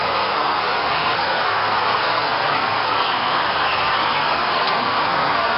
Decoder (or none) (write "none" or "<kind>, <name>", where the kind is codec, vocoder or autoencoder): codec, SNAC